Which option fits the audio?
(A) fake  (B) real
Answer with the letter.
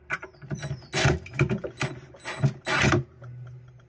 B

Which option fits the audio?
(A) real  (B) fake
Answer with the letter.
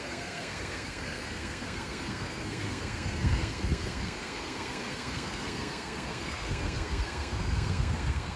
B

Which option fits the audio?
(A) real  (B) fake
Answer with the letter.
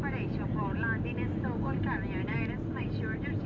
A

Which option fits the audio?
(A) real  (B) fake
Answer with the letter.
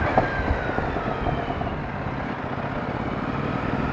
A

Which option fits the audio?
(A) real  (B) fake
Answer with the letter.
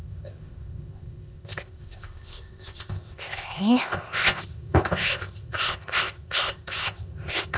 B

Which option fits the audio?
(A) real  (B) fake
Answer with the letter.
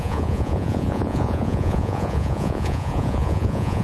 B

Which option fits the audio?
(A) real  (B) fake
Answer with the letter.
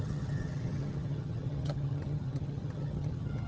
B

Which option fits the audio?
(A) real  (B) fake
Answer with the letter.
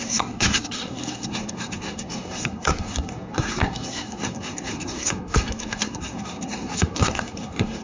B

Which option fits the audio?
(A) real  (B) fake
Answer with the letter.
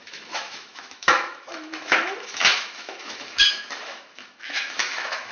B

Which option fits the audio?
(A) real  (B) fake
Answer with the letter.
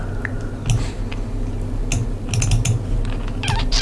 A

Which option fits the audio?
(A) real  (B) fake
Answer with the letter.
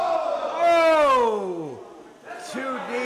A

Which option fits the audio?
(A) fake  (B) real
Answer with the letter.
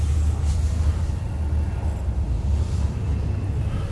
B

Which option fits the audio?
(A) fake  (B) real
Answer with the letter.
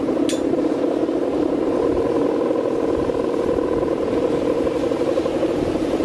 B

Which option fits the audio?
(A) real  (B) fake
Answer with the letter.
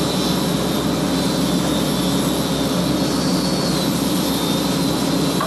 A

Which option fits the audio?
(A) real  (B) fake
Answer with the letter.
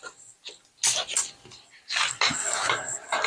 A